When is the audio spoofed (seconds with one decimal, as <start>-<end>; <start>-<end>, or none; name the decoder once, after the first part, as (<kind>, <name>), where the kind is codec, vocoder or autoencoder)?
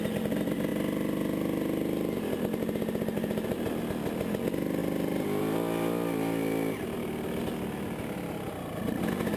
none